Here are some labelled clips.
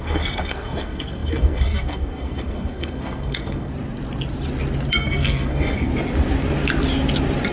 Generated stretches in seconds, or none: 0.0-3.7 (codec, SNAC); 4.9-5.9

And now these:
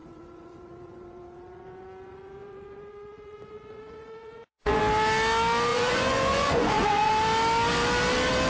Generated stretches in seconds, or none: 0.0-4.8 (vocoder, Vocos); 5.7-7.1

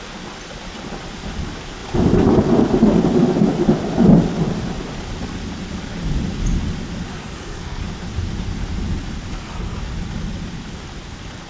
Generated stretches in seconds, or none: 7.1-7.8 (codec, SNAC); 9.3-9.8

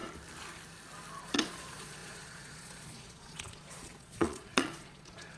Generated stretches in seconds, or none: 1.2-5.4 (vocoder, Vocos)

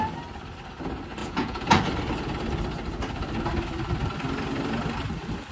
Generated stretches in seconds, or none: 1.2-1.8 (vocoder, Vocos)

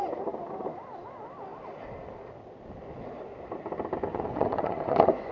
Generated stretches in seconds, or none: 4.1-5.3 (vocoder, Vocos)

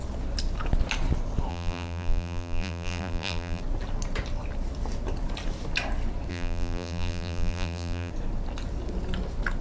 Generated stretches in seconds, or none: 1.5-3.6 (vocoder, BigVGAN v2); 6.3-8.1